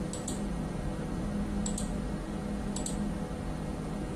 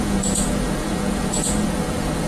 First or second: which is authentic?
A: first